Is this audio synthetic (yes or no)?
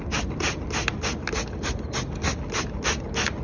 no